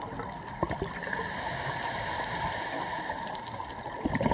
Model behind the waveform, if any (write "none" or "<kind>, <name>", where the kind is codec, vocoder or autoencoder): none